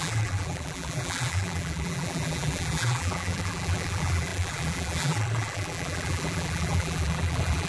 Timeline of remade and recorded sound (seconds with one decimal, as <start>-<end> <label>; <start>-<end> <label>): 0.0-7.7 remade